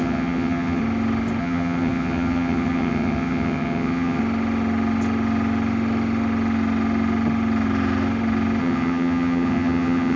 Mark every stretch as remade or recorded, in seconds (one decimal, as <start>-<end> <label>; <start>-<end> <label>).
0.0-0.8 remade; 0.8-1.4 recorded; 1.4-4.2 remade; 4.2-8.6 recorded; 8.6-10.2 remade